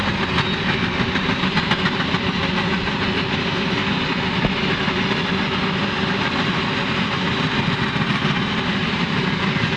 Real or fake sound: real